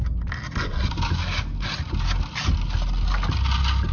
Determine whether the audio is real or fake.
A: real